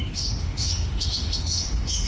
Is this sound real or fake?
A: fake